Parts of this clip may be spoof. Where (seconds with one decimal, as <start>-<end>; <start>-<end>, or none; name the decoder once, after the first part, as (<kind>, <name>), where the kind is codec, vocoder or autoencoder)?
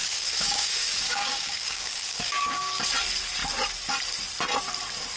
0.0-2.8 (codec, DAC)